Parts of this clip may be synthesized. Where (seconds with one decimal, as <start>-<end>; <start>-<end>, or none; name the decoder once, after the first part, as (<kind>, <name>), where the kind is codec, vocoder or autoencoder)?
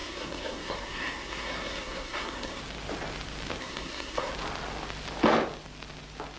0.0-2.6 (codec, SNAC); 3.6-4.3